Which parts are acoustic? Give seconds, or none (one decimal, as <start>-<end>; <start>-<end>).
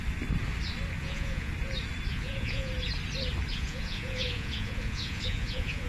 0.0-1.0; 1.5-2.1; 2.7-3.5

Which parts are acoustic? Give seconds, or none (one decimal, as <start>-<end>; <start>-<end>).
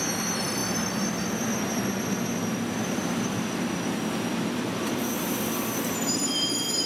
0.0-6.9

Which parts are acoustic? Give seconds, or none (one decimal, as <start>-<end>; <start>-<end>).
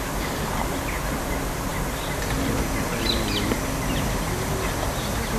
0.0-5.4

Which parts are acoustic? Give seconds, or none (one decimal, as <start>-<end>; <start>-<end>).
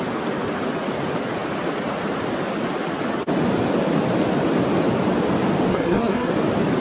0.0-5.7; 6.3-6.8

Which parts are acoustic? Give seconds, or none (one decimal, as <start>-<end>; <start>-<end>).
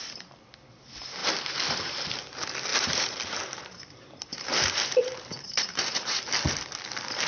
0.0-1.2; 2.0-2.7; 6.2-7.3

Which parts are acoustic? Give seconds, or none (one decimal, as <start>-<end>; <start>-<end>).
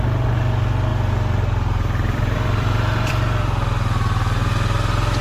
0.0-0.9; 3.1-5.2